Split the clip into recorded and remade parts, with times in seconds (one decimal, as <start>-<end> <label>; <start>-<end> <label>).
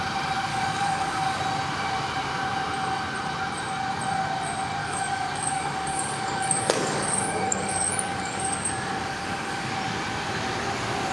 0.0-0.5 recorded; 0.5-1.4 remade; 1.4-4.8 recorded; 4.8-9.7 remade; 9.7-11.1 recorded